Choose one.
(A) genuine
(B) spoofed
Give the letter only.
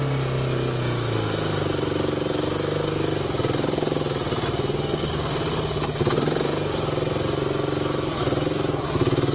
A